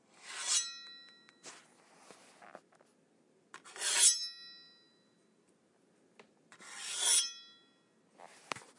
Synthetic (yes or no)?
no